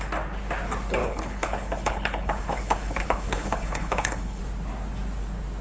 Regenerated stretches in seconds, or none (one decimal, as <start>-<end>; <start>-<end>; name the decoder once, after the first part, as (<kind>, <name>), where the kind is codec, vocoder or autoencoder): 1.0-4.4 (codec, HILCodec)